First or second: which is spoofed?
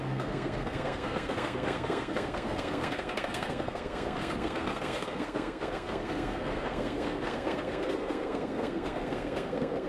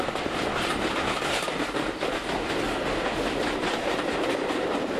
first